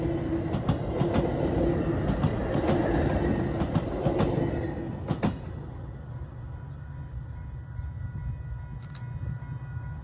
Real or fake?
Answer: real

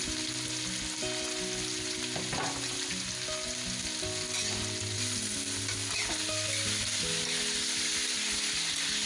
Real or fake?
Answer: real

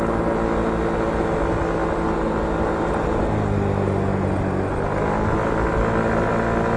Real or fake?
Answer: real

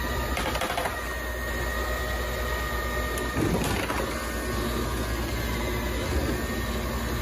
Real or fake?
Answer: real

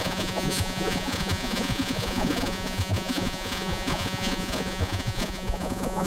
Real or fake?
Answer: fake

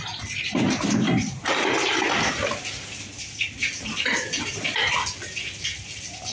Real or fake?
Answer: real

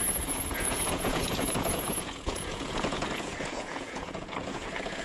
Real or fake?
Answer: fake